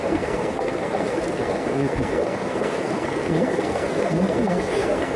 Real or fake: fake